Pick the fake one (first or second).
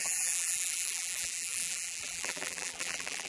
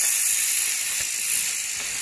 first